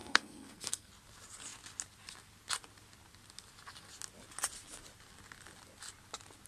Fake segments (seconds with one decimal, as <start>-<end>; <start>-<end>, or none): 0.0-0.9